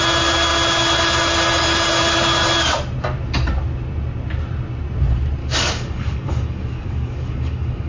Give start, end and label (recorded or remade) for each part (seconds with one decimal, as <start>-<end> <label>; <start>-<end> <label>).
0.0-5.4 recorded; 5.4-7.9 remade